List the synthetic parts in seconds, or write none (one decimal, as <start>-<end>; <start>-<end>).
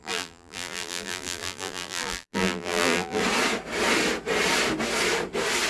0.0-3.2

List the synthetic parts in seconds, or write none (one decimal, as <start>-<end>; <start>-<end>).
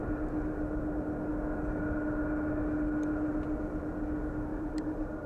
4.5-5.3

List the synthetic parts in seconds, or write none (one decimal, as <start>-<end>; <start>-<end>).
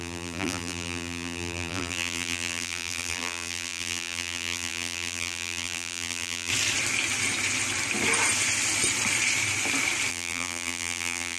0.0-6.5; 10.1-11.4